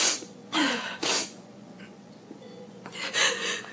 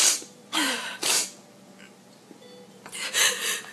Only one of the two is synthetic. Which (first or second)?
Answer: first